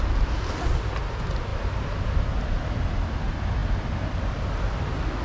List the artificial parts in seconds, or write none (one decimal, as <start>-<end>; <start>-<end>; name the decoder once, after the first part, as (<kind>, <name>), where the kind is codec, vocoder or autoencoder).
none